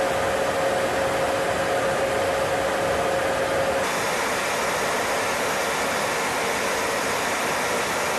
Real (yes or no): yes